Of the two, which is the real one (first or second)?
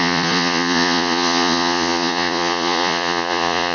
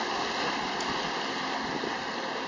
second